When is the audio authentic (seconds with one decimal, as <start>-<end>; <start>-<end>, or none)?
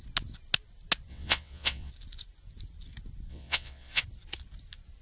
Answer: 0.0-1.1; 1.9-3.3; 4.0-5.0